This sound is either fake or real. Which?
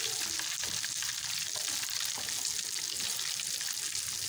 real